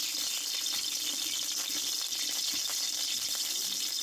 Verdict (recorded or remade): recorded